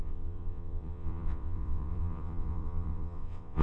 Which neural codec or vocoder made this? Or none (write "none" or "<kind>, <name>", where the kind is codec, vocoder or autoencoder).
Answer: vocoder, WaveNeXt